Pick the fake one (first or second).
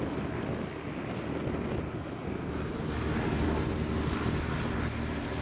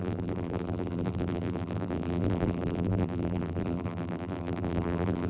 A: second